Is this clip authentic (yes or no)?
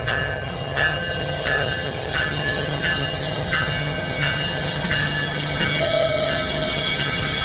no